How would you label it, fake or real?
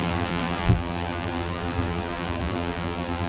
fake